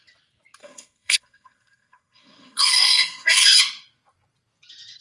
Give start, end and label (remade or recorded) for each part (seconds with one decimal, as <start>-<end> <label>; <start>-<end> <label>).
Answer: 0.0-0.6 recorded; 0.6-3.6 remade; 3.6-5.0 recorded